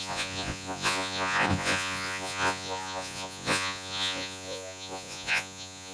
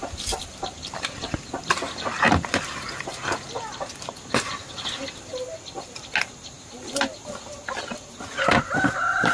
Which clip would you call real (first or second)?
second